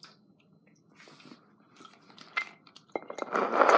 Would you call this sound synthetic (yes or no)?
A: no